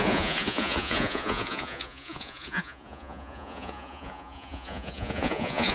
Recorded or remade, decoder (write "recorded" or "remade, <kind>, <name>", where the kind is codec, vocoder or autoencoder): remade, vocoder, Vocos